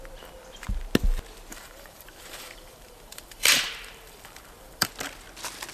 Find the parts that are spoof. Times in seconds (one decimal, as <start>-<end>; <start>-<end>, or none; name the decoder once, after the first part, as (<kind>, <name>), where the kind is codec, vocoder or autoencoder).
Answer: 1.5-4.9 (vocoder, BigVGAN v2)